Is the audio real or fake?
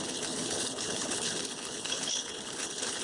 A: fake